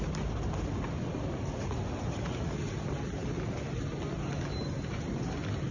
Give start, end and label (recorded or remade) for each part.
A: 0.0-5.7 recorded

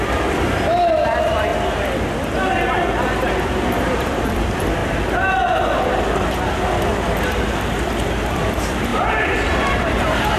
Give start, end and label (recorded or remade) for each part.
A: 0.0-1.5 remade; 1.5-4.0 recorded; 4.0-4.8 remade; 4.8-8.3 recorded; 8.3-10.4 remade